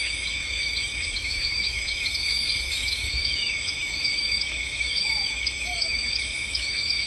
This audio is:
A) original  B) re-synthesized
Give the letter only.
B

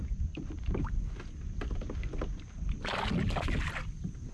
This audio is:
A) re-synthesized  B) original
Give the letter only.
B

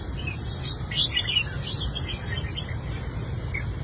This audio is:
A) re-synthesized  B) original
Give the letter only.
A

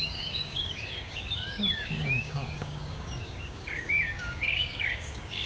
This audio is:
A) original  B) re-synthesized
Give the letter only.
B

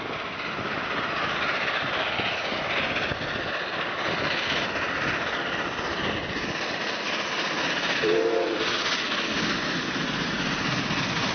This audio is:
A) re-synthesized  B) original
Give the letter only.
B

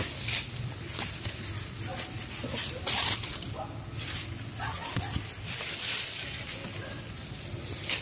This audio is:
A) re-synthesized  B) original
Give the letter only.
B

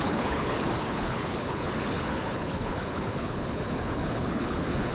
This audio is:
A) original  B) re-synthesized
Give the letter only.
B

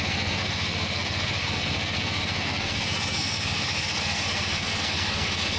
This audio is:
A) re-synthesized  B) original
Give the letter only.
A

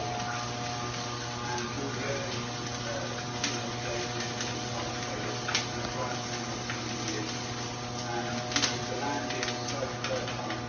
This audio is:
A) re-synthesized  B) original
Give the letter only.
B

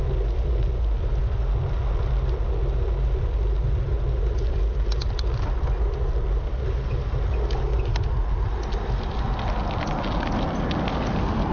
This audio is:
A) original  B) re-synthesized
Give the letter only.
A